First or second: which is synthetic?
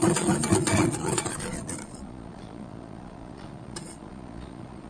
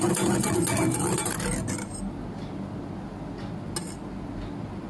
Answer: first